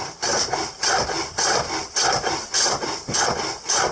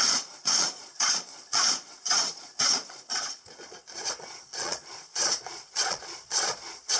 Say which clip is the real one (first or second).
first